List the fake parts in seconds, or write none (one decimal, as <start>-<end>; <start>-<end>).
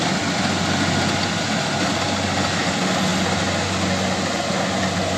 none